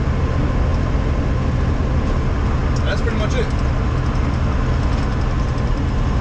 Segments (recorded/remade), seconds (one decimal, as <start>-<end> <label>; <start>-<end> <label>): 0.0-6.2 recorded